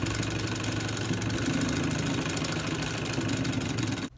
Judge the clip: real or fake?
real